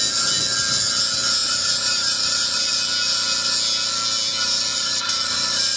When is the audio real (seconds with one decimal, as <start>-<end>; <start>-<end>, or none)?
0.0-1.4; 2.7-4.7